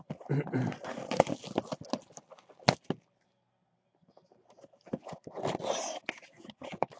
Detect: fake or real real